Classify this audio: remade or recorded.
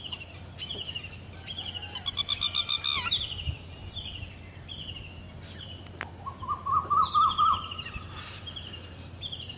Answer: recorded